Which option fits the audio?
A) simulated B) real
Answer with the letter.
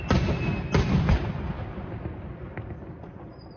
B